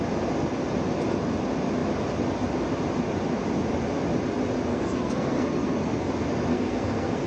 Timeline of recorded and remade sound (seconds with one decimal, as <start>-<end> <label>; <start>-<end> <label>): 0.0-4.7 recorded; 4.7-6.1 remade; 6.1-6.5 recorded; 6.5-7.3 remade